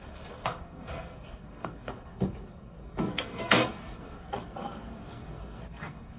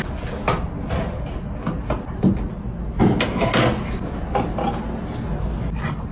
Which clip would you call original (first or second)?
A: second